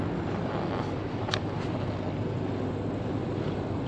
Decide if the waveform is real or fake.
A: real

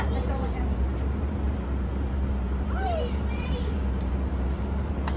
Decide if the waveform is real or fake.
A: fake